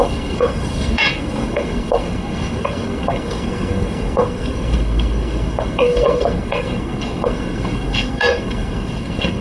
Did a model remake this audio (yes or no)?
yes